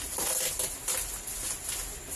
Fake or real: fake